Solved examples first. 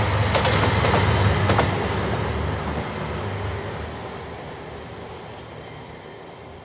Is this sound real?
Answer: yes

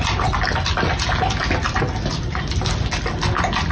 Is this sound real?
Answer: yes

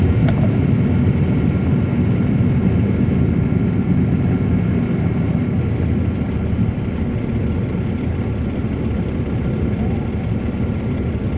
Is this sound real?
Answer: yes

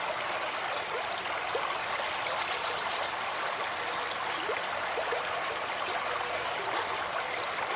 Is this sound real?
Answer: yes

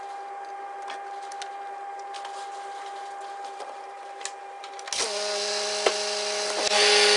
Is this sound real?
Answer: yes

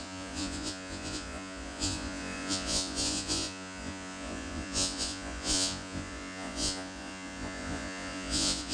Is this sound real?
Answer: no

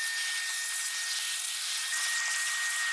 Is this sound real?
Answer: yes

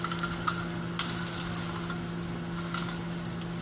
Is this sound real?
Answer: yes